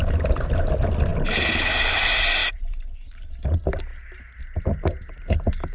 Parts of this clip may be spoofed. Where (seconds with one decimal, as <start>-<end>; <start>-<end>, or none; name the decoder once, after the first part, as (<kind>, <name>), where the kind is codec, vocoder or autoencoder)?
none